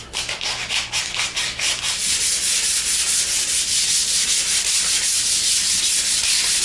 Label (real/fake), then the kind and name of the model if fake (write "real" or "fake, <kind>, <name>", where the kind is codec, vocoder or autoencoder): real